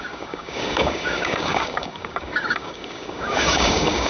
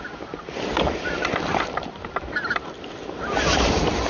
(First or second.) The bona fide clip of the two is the second